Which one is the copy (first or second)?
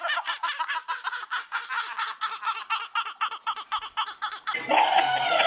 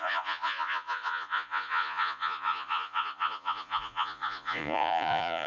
second